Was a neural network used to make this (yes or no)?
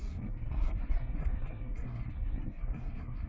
yes